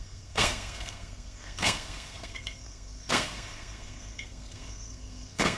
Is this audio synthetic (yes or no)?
yes